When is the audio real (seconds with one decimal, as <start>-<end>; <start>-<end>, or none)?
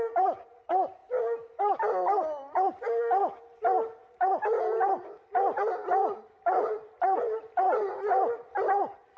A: 0.0-9.2